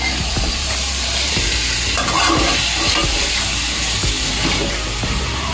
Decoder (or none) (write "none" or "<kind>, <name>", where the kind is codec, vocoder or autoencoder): vocoder, BigVGAN v2